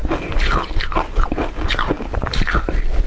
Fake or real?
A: real